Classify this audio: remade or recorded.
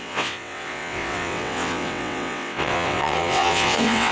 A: remade